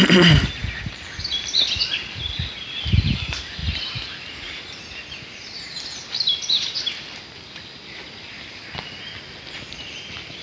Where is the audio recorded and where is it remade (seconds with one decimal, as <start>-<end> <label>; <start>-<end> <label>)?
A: 0.0-10.4 recorded